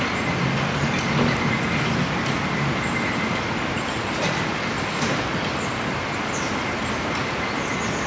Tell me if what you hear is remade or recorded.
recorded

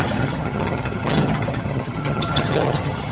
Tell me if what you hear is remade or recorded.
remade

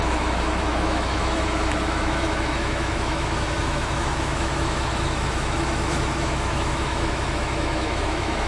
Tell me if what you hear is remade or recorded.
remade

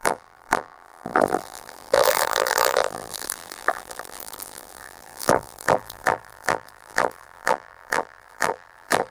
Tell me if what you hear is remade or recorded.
remade